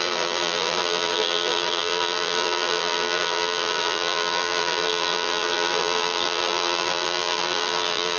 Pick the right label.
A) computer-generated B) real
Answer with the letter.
A